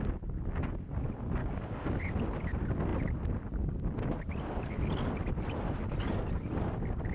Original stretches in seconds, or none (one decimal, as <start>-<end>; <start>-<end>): 0.0-1.4; 2.0-7.1